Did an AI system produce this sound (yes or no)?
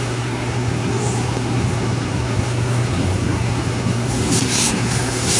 yes